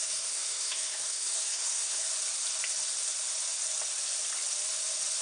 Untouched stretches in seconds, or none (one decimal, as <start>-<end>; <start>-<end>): 2.0-5.2